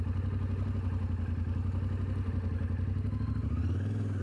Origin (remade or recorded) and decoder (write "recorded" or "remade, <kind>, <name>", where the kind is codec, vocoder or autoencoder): recorded